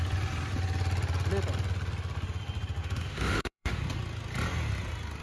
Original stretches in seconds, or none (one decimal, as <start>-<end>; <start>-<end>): 0.0-2.8; 3.8-5.2